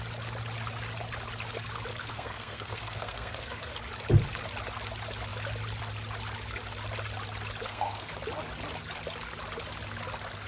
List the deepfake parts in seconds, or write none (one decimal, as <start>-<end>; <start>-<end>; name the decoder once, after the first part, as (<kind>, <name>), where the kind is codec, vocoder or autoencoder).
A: 2.0-3.7 (codec, SNAC); 7.6-8.1